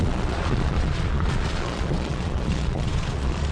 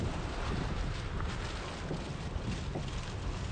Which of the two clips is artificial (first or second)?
first